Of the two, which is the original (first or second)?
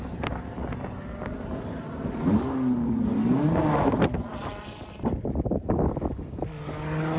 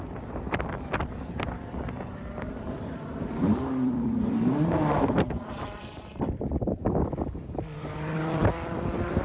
first